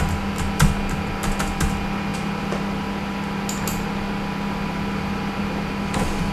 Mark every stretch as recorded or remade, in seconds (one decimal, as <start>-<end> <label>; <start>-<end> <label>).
0.0-6.3 recorded